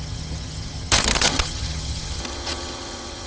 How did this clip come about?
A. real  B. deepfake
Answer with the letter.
B